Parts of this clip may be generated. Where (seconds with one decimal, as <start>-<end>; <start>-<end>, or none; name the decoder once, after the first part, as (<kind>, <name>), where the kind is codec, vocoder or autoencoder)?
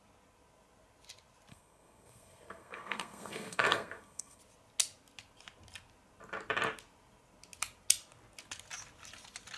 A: 1.5-4.4 (codec, SNAC)